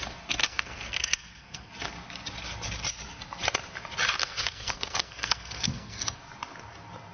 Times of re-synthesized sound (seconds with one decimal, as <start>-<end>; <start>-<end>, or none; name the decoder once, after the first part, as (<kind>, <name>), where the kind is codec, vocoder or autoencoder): 0.4-1.7 (codec, SNAC); 4.2-6.2